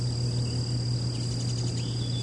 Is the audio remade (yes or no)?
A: no